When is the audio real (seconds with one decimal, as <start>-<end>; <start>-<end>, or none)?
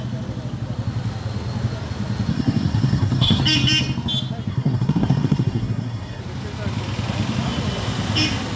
0.0-2.3; 3.4-4.5; 6.2-8.6